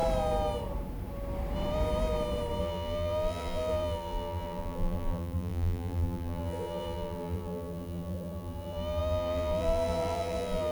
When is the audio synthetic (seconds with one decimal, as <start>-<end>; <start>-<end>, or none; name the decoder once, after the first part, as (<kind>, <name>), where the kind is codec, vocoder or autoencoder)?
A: 2.6-10.7 (vocoder, BigVGAN v2)